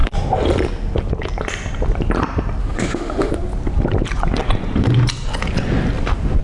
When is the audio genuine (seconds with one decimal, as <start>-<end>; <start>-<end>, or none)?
0.0-2.6; 3.3-6.4